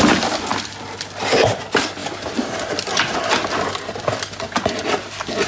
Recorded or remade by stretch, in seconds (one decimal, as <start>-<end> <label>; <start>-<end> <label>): 0.0-5.5 recorded